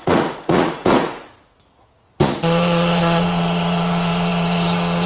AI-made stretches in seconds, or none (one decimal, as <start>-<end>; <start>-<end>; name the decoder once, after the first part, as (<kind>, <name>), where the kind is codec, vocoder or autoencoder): 0.0-5.1 (vocoder, Vocos)